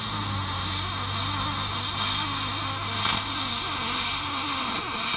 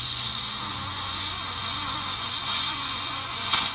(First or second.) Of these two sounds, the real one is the first